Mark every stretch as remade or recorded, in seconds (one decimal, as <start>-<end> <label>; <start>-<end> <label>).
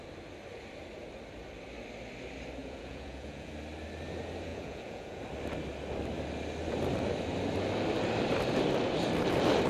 0.0-2.6 recorded; 2.6-3.5 remade; 3.5-4.5 recorded; 4.5-5.2 remade; 5.2-9.7 recorded